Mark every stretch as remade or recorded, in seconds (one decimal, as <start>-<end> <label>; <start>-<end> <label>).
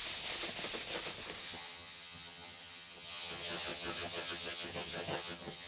0.0-1.4 recorded; 1.4-5.7 remade